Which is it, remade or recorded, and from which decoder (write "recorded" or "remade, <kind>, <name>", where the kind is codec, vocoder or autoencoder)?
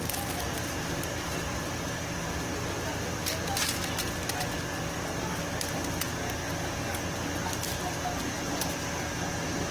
recorded